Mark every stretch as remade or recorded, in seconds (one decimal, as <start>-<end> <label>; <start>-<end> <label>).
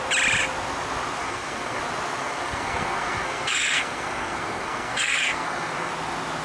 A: 0.0-1.2 recorded; 1.2-1.8 remade; 1.8-2.2 recorded; 2.2-5.9 remade; 5.9-6.4 recorded